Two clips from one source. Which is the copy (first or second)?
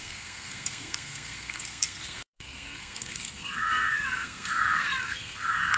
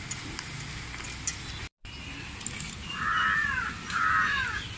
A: first